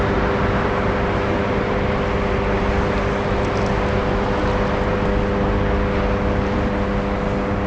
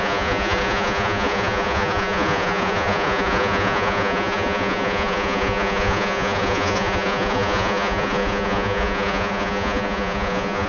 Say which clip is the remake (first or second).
second